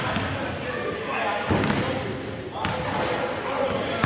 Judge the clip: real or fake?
real